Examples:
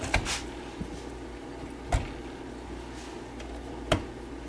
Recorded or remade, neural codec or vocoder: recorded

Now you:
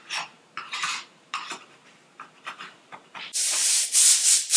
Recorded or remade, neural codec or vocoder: remade, vocoder, BigVGAN v2